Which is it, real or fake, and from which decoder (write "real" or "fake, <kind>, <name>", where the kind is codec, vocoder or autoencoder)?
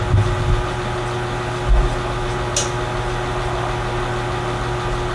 real